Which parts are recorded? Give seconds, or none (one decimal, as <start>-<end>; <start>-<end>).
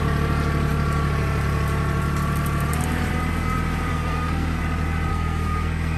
0.0-3.9; 4.6-5.1